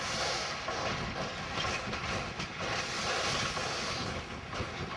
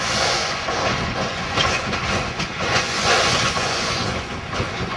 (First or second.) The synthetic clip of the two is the second